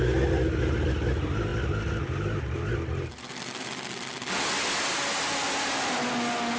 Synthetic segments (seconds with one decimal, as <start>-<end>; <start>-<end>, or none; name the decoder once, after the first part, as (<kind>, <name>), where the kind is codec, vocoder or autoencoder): none